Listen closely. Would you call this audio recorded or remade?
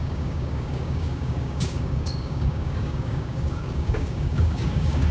remade